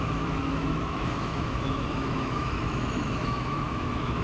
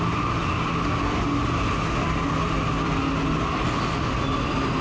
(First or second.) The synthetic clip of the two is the first